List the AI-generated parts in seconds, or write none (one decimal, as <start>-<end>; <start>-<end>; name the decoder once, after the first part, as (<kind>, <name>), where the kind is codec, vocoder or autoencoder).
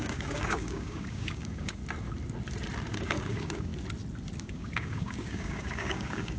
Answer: 0.0-1.8 (codec, DAC); 2.9-3.7; 4.4-6.4